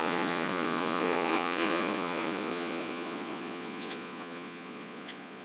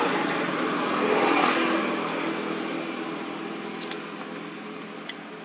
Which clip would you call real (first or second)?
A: second